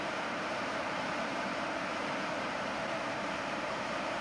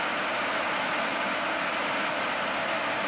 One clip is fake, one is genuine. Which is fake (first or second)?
first